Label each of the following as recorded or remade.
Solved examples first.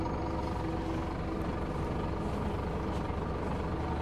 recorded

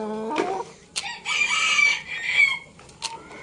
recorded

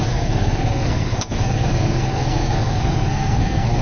remade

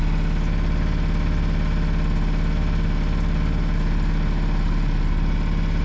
recorded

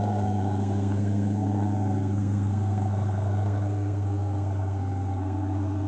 remade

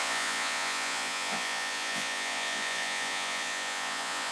remade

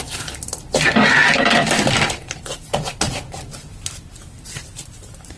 recorded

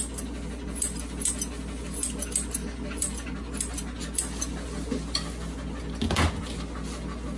recorded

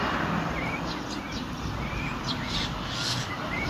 recorded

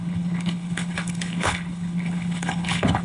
remade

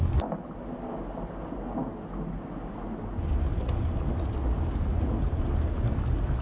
recorded